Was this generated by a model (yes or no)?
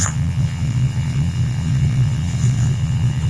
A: yes